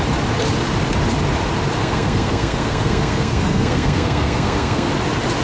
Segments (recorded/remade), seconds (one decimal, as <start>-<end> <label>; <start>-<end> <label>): 0.0-1.8 recorded; 1.8-4.9 remade; 4.9-5.4 recorded